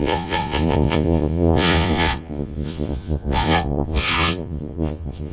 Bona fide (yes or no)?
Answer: no